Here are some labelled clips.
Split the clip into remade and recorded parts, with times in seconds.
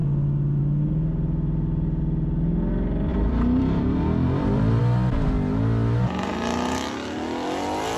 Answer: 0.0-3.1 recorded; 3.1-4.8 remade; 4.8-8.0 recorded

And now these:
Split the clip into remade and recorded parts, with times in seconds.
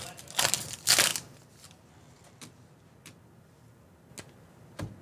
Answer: 0.0-5.0 recorded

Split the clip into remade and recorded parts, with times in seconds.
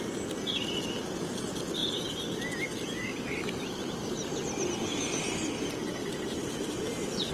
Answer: 0.0-6.0 recorded; 6.0-7.3 remade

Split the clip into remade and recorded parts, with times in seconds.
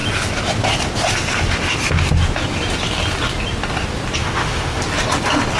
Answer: 0.0-4.2 recorded; 4.2-4.8 remade; 4.8-5.6 recorded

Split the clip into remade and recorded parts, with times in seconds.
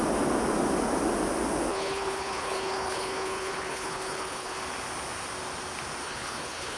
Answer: 0.0-1.7 recorded; 1.7-4.6 remade; 4.6-6.0 recorded; 6.0-6.8 remade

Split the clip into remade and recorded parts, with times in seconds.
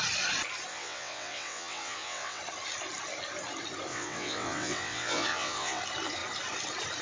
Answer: 0.0-0.7 recorded; 0.7-2.4 remade; 2.4-3.9 recorded; 3.9-5.8 remade; 5.8-7.0 recorded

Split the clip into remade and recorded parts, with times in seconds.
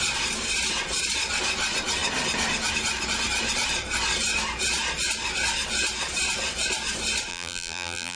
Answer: 0.0-7.3 recorded; 7.3-8.2 remade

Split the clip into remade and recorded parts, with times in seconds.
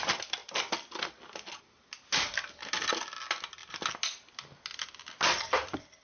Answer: 0.0-6.0 recorded